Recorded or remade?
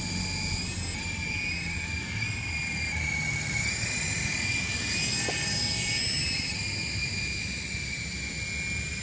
recorded